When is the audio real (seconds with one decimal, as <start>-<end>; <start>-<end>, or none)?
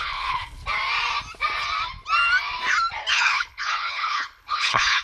0.6-3.1